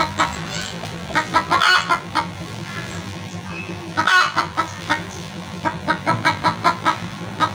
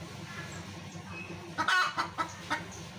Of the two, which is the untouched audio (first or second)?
second